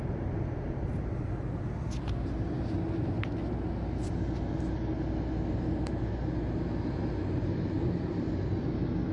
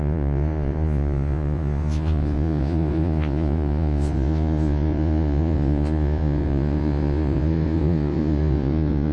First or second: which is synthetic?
second